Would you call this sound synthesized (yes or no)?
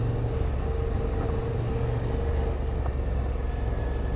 no